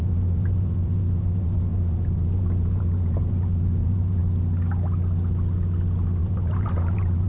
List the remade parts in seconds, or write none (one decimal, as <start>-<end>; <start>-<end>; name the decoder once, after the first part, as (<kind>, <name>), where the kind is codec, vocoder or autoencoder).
0.0-4.2 (vocoder, BigVGAN v2); 6.2-7.3